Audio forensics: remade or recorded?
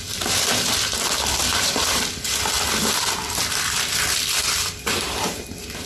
remade